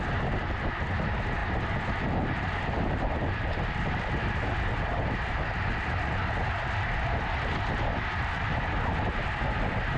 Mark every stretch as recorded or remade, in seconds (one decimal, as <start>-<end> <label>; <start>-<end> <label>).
0.0-10.0 recorded